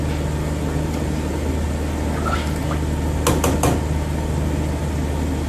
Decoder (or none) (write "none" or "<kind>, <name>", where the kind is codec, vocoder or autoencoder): none